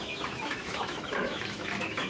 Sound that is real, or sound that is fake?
fake